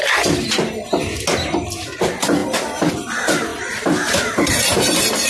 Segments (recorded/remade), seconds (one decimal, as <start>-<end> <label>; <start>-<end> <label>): 0.0-2.4 recorded; 2.4-2.9 remade; 2.9-3.5 recorded; 3.5-4.5 remade; 4.5-5.3 recorded